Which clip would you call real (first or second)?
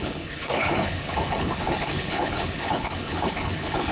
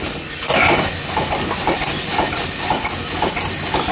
second